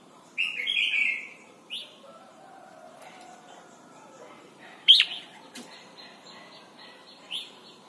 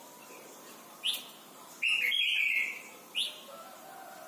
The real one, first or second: second